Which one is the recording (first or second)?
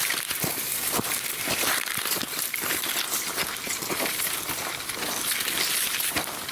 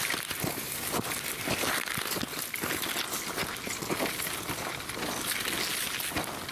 second